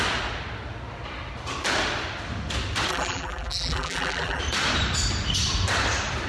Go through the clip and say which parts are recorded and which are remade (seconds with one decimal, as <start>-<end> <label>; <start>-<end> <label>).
0.0-2.9 recorded; 2.9-4.4 remade; 4.4-6.3 recorded